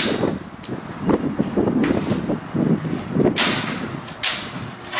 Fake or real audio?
real